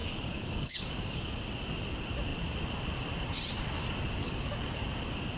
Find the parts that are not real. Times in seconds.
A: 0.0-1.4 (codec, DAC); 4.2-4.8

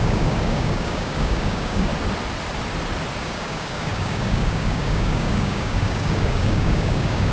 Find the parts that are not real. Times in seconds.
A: 0.0-1.9 (codec, DAC); 3.2-7.3

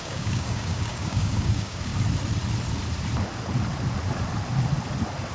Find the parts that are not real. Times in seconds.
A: 0.0-1.9 (codec, DAC)